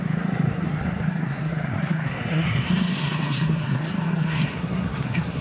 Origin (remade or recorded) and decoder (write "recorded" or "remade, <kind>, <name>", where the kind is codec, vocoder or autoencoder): remade, codec, SNAC